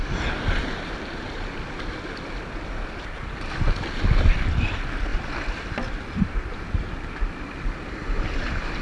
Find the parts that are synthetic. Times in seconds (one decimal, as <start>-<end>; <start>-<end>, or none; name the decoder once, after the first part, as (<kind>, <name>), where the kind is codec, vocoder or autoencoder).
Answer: none